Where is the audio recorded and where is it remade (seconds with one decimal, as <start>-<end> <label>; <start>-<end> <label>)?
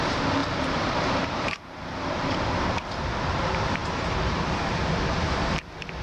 0.0-6.0 remade